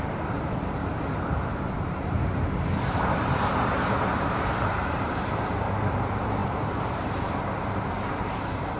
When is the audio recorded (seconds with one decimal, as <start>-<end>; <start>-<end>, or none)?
none